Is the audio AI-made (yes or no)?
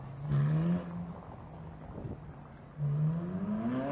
no